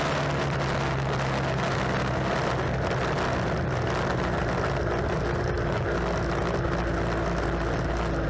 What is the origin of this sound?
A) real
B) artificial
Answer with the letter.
A